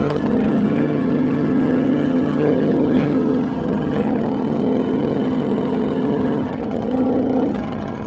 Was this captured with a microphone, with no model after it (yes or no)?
no